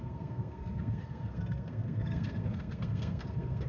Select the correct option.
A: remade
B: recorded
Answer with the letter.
A